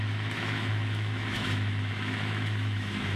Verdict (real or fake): fake